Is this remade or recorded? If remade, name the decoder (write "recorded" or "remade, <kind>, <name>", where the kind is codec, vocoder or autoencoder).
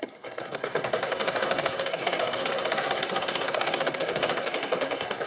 remade, codec, SNAC